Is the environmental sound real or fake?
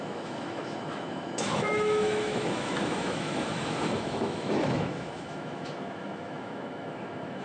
fake